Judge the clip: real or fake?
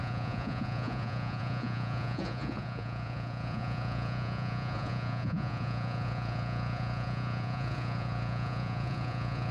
fake